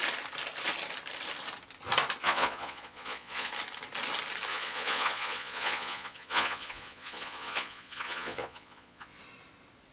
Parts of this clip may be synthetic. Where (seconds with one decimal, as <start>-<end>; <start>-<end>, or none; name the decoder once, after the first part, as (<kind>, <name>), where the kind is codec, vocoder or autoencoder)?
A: 2.2-3.5 (vocoder, Vocos); 4.5-9.2